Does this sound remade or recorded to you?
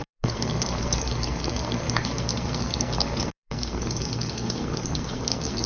remade